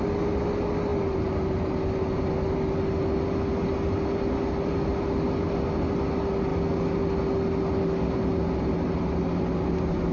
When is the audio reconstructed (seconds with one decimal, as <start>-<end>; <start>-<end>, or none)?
none